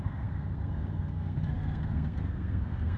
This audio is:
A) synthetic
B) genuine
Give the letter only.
A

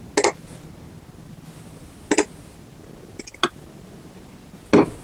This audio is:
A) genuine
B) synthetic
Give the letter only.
A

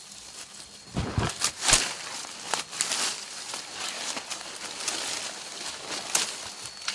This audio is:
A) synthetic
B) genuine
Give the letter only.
B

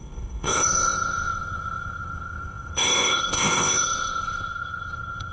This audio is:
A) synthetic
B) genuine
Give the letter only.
A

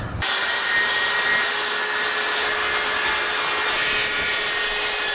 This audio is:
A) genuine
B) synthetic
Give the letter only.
A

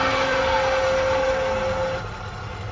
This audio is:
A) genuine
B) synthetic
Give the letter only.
A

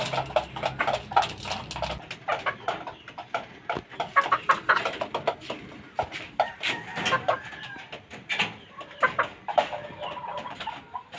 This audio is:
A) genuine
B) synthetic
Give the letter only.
A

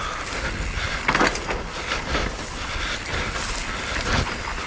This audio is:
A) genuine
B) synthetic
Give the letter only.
A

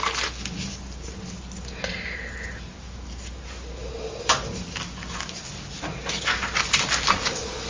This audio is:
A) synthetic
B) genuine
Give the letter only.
B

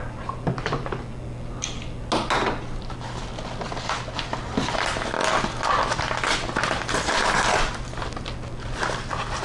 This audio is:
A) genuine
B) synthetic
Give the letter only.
A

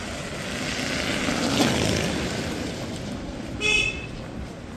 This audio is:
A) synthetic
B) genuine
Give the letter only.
B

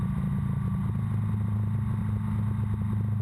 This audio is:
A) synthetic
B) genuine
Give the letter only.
B